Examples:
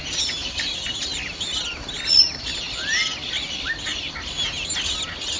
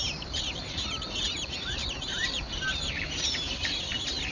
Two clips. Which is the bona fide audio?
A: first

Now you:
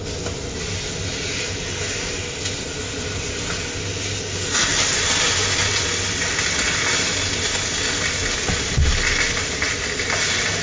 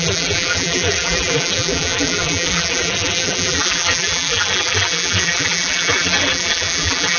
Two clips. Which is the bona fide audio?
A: first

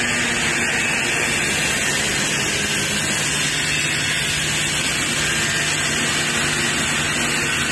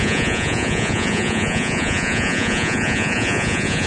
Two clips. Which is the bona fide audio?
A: first